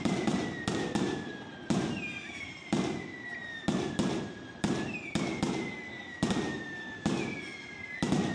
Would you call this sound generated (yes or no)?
no